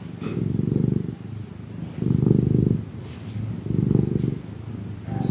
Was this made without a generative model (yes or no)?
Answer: yes